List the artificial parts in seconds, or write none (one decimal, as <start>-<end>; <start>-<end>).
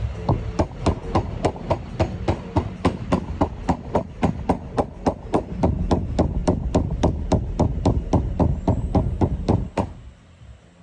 6.4-8.8